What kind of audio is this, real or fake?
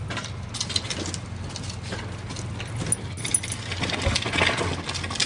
real